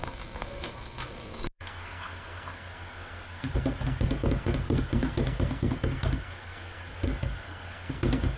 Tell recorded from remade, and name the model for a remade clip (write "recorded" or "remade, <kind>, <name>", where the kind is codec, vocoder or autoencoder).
remade, codec, SNAC